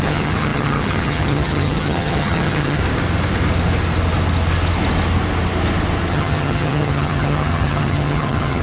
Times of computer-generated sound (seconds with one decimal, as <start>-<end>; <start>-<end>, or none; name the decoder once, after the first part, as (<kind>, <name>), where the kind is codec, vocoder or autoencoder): 0.0-2.8 (vocoder, HiFi-GAN); 6.1-8.6